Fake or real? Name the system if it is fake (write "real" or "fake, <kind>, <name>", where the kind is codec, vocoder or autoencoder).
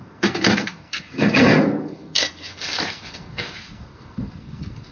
fake, codec, SNAC